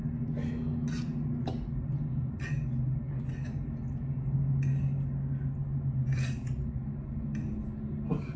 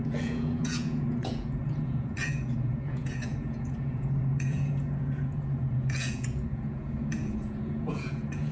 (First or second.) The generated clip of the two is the second